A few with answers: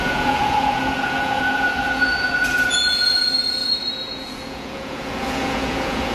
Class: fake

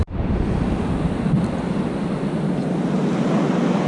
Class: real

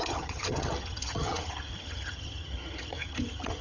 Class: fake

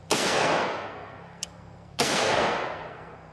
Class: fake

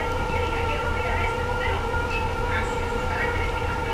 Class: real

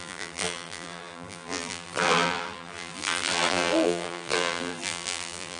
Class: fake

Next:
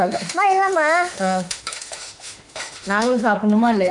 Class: fake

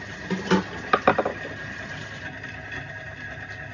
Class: real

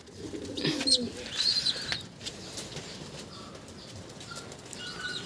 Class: real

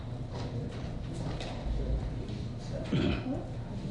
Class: real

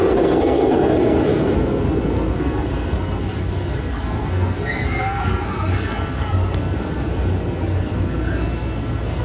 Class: fake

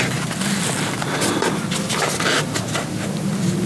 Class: real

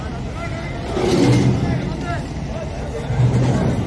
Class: real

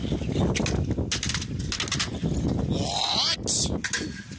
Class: real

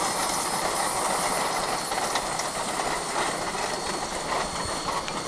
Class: real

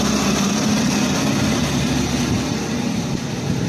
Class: real